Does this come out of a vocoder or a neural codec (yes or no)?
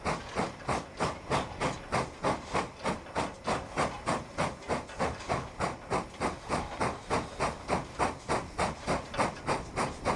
no